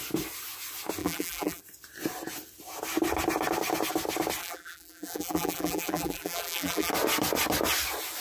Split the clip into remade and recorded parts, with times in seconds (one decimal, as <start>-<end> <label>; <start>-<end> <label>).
0.0-1.0 recorded; 1.0-1.6 remade; 1.6-4.4 recorded; 4.4-6.9 remade; 6.9-8.2 recorded